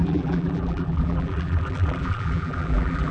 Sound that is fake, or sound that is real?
fake